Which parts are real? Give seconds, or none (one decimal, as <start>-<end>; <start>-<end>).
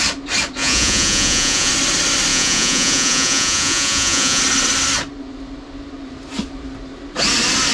0.0-0.6; 1.7-2.3; 4.4-7.7